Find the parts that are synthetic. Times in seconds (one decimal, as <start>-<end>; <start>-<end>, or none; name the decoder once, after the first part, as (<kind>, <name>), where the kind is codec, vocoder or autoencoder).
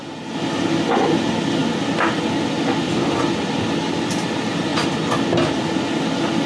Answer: 0.0-1.6 (vocoder, BigVGAN v2); 3.8-4.7; 5.6-6.5